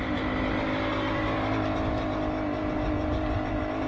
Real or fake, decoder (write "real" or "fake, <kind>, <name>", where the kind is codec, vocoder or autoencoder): real